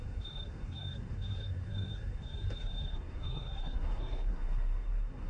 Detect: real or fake fake